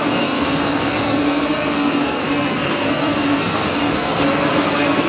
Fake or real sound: fake